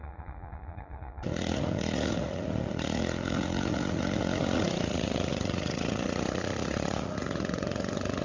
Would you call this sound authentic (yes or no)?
no